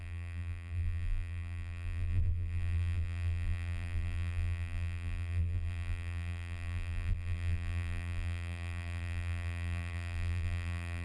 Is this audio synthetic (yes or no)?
yes